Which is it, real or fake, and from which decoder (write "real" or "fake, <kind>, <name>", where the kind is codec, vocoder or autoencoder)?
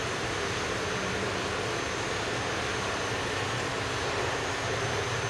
real